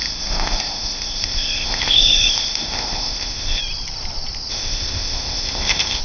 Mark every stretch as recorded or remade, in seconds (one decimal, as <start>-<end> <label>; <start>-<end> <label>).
0.0-3.6 remade; 3.6-4.5 recorded; 4.5-6.0 remade